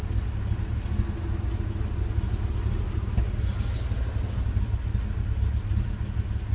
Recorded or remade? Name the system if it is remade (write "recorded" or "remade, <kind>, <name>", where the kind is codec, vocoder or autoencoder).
recorded